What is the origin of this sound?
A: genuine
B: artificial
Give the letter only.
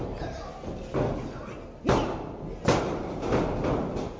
A